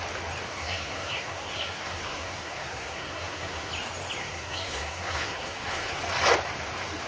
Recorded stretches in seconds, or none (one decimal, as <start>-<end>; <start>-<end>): 0.0-0.5; 3.7-4.2; 6.0-7.1